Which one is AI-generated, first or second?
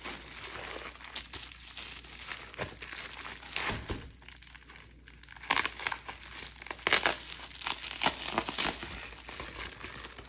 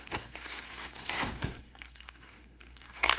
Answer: second